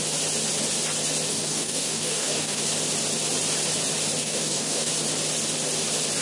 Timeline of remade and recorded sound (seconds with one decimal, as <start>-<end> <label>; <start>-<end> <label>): 0.0-1.3 recorded; 1.3-2.6 remade; 2.6-4.2 recorded; 4.2-4.9 remade; 4.9-6.2 recorded